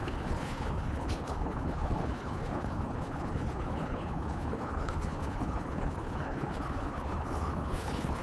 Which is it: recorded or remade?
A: remade